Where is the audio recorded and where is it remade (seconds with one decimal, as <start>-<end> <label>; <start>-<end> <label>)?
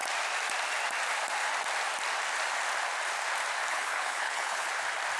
0.0-3.7 recorded; 3.7-4.7 remade; 4.7-5.2 recorded